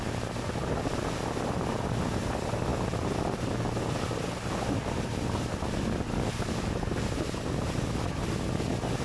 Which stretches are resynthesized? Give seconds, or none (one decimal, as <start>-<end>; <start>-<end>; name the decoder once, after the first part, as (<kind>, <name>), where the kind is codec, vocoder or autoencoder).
none